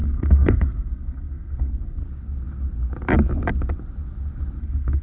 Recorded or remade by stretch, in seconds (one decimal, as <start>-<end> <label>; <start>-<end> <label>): 0.0-2.0 remade; 2.0-4.6 recorded; 4.6-5.0 remade